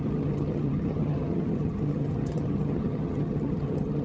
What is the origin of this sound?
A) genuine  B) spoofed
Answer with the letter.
B